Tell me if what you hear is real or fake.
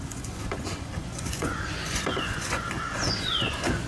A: fake